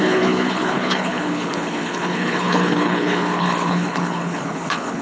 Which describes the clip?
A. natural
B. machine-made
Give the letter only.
B